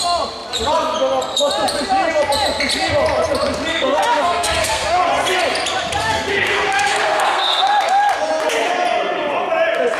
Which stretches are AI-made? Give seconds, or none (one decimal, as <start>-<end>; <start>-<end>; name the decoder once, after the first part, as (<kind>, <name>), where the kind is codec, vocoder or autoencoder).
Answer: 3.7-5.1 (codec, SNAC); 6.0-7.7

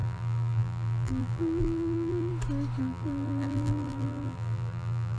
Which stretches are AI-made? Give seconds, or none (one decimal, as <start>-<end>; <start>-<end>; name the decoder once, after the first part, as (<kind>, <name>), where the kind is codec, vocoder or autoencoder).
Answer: 0.0-2.3 (vocoder, BigVGAN v2); 2.8-5.2

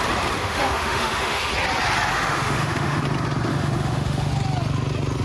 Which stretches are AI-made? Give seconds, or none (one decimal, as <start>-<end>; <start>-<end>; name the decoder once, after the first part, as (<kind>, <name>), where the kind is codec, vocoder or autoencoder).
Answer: 0.4-1.5 (autoencoder, DAC-VAE); 2.1-3.0; 3.5-4.3

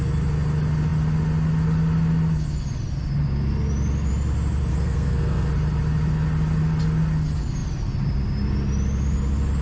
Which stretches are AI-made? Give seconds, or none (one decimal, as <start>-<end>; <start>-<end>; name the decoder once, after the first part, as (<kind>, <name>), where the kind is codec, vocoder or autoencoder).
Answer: 4.7-5.5 (codec, SNAC)

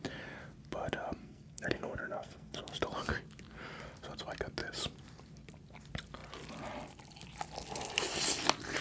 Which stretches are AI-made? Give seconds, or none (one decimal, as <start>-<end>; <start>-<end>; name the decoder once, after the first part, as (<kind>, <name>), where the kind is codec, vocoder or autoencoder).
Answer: 1.2-2.8 (codec, SNAC)